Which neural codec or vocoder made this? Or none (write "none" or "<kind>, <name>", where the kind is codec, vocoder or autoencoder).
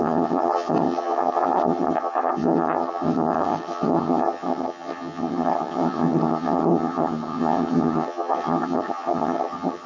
vocoder, HiFi-GAN